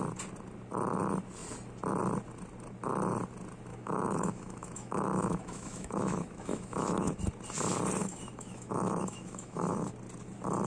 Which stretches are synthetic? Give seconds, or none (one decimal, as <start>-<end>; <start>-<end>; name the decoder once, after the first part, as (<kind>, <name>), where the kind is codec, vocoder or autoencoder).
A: 3.7-7.2 (autoencoder, DAC-VAE); 8.0-9.9